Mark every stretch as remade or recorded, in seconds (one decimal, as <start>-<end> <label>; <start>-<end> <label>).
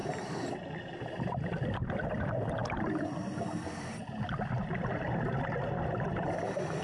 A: 0.0-6.8 recorded